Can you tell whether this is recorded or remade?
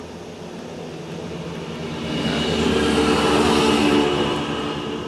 recorded